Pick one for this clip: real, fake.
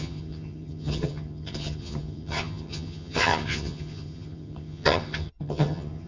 fake